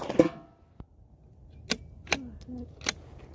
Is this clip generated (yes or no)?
no